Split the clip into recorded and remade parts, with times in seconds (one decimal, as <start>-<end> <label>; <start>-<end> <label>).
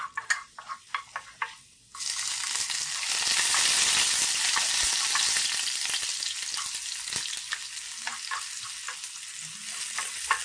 0.0-10.4 recorded